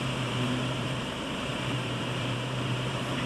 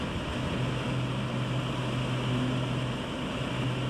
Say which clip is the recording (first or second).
second